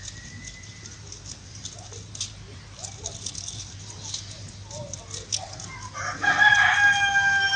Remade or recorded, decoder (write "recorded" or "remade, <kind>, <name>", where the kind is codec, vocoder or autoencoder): recorded